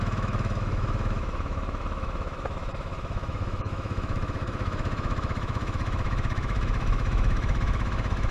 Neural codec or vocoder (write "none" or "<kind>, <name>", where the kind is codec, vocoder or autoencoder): autoencoder, DAC-VAE